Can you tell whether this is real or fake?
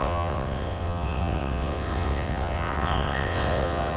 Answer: fake